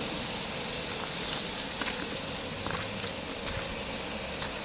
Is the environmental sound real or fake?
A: real